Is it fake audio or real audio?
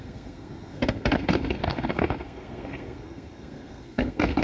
fake